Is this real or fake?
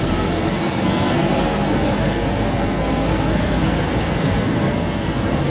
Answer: fake